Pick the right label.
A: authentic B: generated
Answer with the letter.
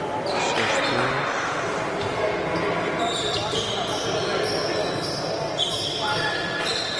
A